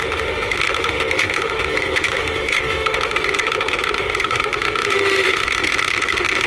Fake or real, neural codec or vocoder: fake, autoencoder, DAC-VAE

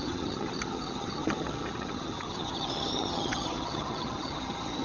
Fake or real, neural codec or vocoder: fake, vocoder, HiFi-GAN